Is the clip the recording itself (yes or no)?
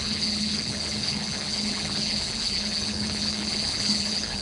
no